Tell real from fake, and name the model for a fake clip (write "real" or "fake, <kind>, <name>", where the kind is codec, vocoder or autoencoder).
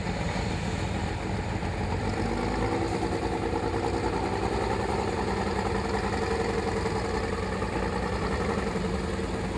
real